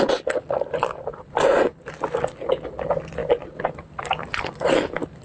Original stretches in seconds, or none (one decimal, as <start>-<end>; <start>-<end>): 0.0-5.2